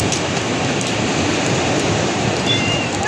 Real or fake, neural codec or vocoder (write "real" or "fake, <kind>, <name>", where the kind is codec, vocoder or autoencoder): fake, vocoder, BigVGAN v2